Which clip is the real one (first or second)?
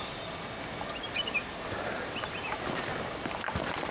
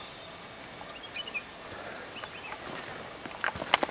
second